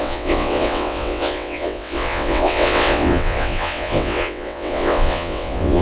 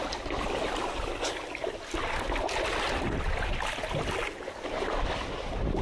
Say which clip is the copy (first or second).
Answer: first